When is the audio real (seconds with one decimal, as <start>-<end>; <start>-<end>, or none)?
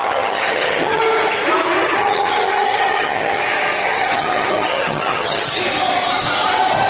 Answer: 1.0-2.0; 3.4-3.8; 5.6-6.9